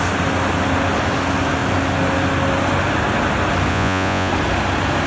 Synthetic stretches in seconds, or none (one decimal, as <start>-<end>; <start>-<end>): 3.7-4.3

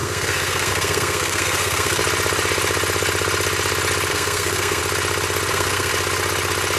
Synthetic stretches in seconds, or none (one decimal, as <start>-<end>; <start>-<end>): 0.0-2.0; 4.1-4.8; 5.5-5.9

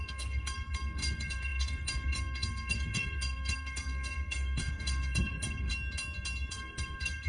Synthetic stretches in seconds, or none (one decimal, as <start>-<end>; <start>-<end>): 0.0-5.7; 6.5-7.3

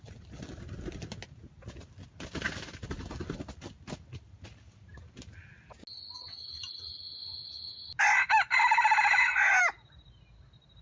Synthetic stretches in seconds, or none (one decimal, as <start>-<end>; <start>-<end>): none

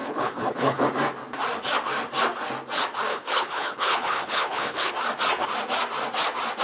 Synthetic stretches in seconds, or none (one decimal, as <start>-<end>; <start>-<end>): 0.0-0.8; 3.1-4.9